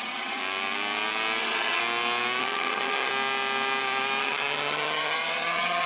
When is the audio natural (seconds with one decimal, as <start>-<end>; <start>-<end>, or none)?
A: 0.4-1.4; 1.8-2.4; 3.1-4.2